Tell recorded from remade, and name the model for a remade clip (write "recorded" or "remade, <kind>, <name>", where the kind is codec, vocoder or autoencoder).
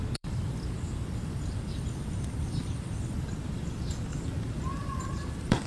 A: remade, vocoder, BigVGAN v2